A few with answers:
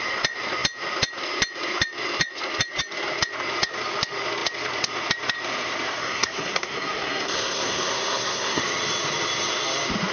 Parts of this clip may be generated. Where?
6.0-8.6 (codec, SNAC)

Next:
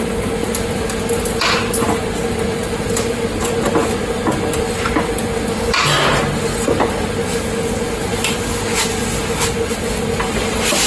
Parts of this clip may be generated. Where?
none

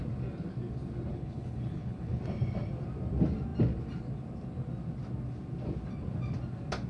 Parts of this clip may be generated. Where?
1.1-2.2 (codec, HILCodec)

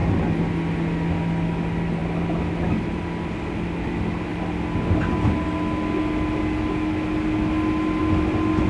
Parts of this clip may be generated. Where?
none

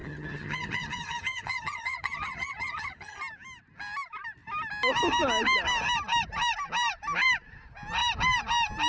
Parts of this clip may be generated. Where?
0.0-3.2 (vocoder, HiFi-GAN)

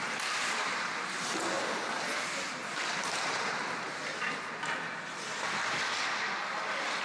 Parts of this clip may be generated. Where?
none